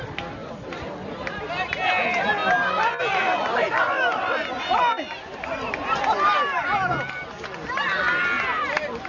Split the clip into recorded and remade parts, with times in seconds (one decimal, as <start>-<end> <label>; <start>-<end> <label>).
0.0-9.1 recorded